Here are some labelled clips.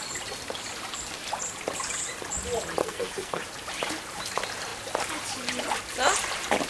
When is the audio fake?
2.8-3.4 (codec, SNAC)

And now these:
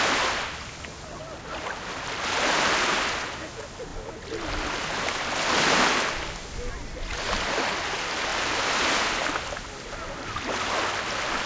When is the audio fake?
8.3-9.0 (vocoder, BigVGAN v2)

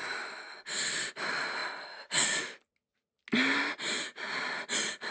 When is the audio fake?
none

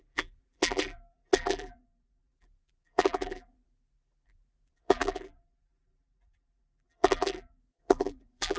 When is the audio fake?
0.0-8.6 (vocoder, BigVGAN v2)

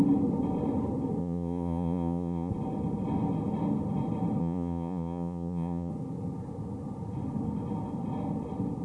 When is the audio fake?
1.2-2.5 (vocoder, Vocos); 4.4-5.9